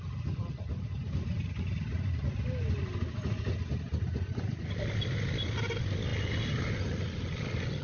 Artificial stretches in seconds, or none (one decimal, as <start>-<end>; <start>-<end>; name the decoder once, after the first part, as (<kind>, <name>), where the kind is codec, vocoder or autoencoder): none